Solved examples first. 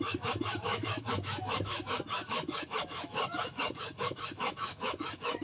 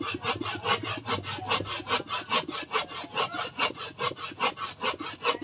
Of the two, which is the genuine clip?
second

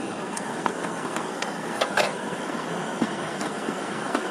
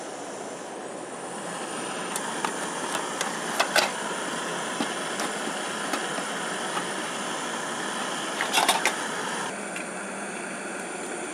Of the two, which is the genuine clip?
second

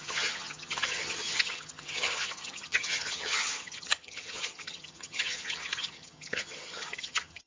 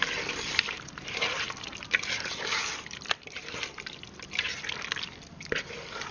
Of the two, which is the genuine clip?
second